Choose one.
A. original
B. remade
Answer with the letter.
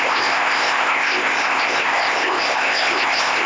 B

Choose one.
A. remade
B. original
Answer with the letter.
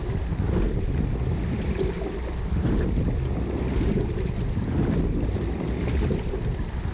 B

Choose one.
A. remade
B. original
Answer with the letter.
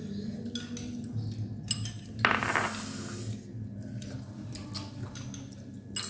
B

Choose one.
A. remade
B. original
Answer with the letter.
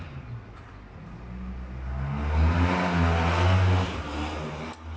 B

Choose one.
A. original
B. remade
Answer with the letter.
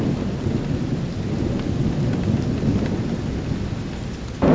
A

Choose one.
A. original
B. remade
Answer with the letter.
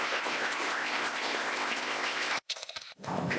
B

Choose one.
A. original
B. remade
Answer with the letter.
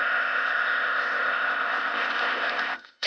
B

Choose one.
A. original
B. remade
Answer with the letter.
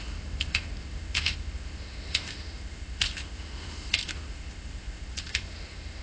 B